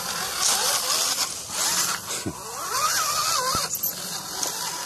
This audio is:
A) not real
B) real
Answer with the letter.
B